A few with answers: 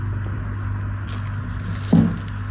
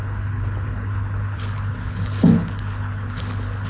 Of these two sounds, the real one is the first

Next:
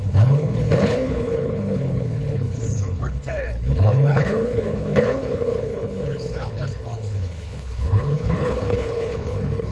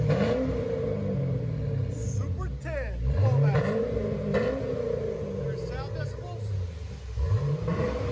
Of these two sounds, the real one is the second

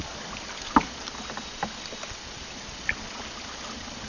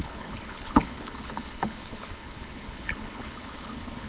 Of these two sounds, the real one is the first